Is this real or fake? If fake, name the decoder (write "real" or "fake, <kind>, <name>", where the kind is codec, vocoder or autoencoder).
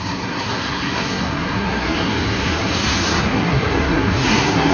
fake, codec, SNAC